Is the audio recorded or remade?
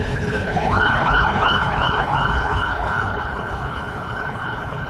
remade